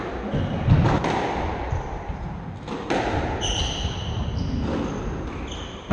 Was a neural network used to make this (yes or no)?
no